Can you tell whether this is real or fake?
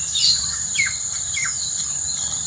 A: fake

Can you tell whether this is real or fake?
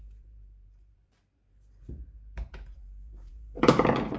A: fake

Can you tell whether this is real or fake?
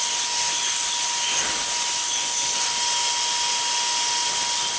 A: real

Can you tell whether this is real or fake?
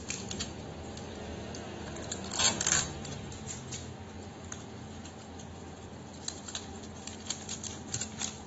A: real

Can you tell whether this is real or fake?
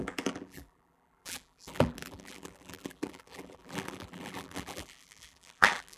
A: fake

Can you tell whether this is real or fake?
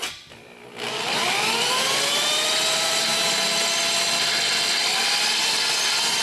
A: real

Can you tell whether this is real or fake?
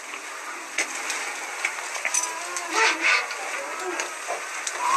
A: real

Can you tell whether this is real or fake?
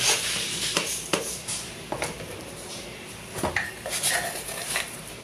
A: fake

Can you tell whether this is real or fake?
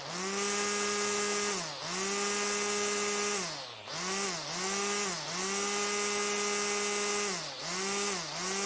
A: real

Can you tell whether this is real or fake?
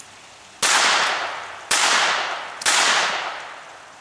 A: real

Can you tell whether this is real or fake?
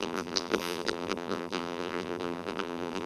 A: fake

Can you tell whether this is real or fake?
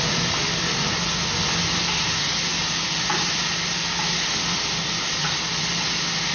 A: real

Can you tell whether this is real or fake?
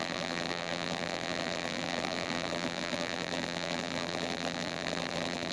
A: fake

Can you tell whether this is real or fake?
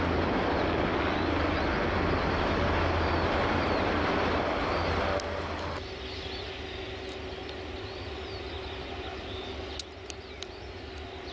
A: real